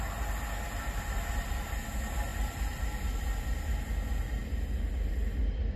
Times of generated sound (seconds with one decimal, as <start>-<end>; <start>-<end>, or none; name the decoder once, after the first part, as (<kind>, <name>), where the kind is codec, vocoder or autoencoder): none